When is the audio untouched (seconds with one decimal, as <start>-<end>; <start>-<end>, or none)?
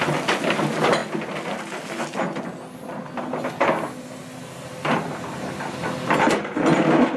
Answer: 0.0-7.2